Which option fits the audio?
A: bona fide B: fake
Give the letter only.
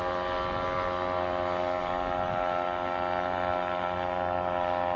A